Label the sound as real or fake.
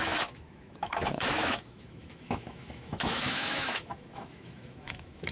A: fake